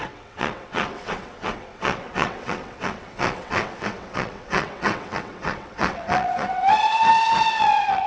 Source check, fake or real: fake